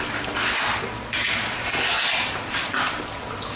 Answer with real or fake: real